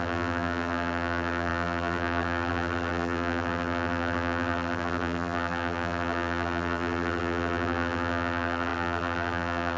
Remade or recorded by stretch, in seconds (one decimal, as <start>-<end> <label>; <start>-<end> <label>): 0.0-9.8 remade